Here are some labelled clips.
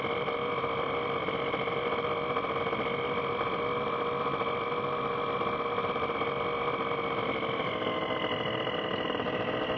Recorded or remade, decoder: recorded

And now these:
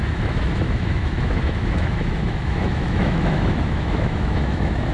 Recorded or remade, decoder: remade, autoencoder, DAC-VAE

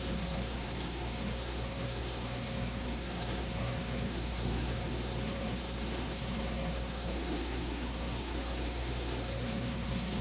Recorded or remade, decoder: remade, codec, SNAC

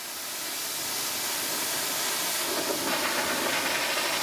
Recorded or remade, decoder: recorded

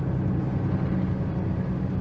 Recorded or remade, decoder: recorded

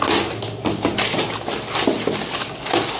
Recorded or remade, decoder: recorded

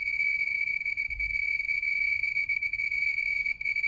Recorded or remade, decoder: remade, vocoder, Vocos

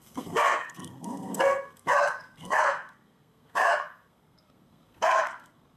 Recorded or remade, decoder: remade, codec, SNAC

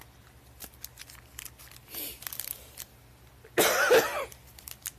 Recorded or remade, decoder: recorded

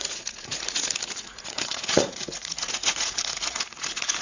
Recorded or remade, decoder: remade, vocoder, Vocos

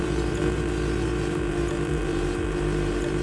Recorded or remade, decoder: remade, vocoder, BigVGAN v2